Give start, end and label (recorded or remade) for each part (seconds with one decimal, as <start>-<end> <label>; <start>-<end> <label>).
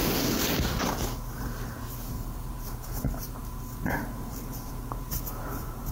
0.0-1.4 recorded; 1.4-5.9 remade